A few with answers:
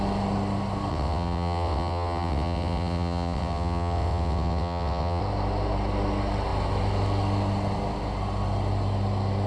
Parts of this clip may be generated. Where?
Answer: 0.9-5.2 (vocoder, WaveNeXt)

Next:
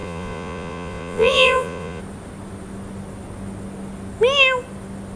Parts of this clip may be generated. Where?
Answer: 0.0-2.0 (vocoder, Vocos)

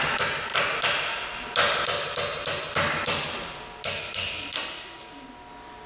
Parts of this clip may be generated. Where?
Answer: none

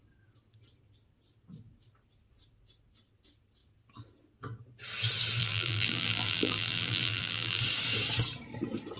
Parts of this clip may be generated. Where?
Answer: 5.4-7.6 (vocoder, BigVGAN v2)

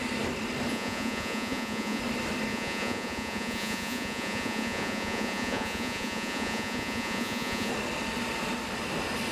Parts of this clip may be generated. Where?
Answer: 0.7-2.0 (vocoder, Vocos); 2.5-7.7

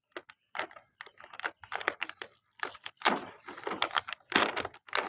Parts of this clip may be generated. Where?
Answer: none

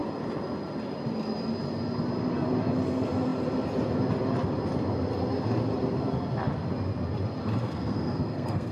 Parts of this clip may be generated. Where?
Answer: 7.6-8.7 (codec, SNAC)